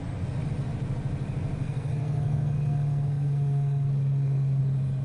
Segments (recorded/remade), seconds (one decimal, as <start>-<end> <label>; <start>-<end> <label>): 0.0-1.6 recorded; 1.6-4.6 remade; 4.6-5.0 recorded